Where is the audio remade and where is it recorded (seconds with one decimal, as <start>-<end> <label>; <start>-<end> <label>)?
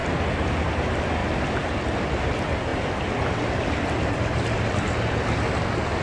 0.0-6.0 recorded